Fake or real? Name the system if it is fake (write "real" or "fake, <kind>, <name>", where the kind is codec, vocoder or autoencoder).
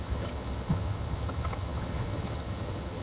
fake, vocoder, HiFi-GAN